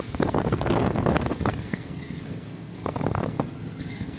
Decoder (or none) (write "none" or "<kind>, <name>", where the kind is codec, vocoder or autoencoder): codec, SNAC